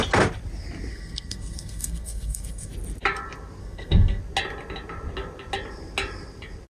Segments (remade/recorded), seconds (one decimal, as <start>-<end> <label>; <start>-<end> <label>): 0.0-0.9 recorded; 0.9-2.7 remade; 2.7-3.6 recorded; 3.6-4.2 remade; 4.2-6.7 recorded